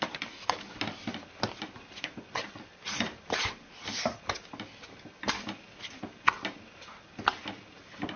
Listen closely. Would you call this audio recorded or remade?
recorded